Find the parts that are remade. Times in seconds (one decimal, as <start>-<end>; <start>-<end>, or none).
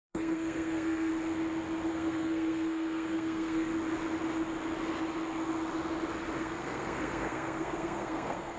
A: 0.0-1.1; 1.9-3.7; 6.4-8.6